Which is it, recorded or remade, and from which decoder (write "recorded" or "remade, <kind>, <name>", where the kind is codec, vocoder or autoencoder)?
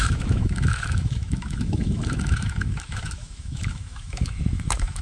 remade, autoencoder, DAC-VAE